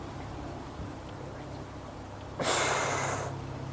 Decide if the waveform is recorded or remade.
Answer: recorded